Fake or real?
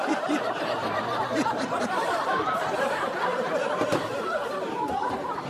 fake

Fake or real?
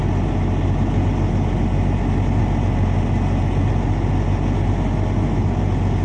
real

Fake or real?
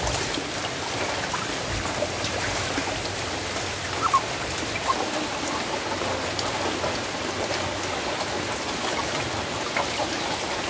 real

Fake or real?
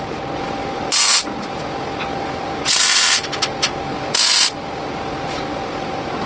real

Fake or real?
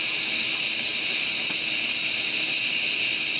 real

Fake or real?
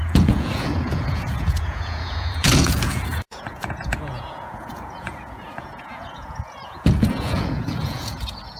fake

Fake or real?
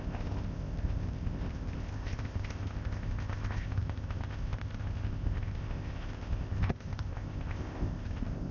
fake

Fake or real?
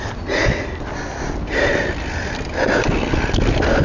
real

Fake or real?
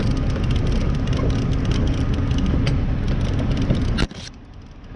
fake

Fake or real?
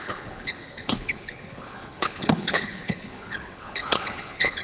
fake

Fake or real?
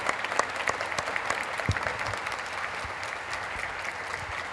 real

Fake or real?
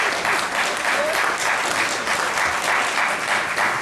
real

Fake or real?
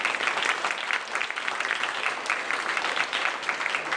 fake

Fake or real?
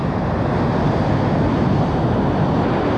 real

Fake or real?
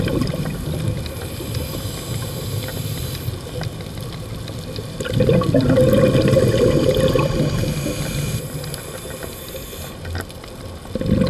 real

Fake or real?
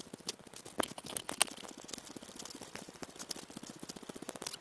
real